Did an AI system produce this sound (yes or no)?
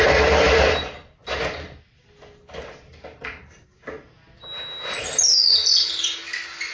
no